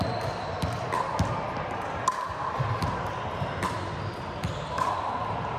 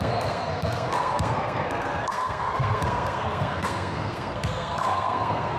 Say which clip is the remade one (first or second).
second